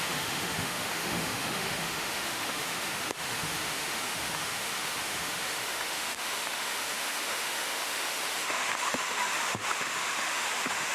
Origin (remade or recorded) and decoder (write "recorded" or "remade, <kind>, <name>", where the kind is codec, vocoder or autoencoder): remade, autoencoder, DAC-VAE